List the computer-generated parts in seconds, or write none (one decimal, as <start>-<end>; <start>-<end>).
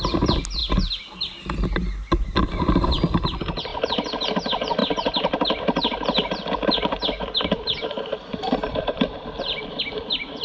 4.8-9.8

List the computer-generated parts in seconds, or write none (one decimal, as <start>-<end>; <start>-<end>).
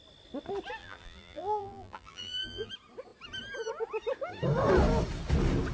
0.8-2.7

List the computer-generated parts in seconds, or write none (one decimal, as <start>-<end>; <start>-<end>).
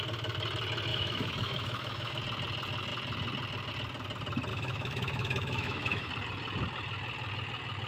0.9-2.2; 4.5-6.1